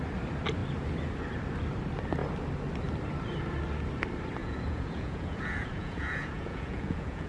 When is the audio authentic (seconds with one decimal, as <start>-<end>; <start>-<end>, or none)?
0.0-4.4